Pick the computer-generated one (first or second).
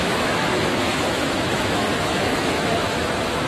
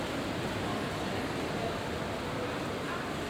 first